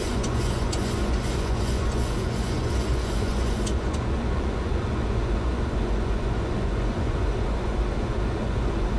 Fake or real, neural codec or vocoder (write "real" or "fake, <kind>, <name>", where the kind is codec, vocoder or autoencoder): fake, vocoder, Vocos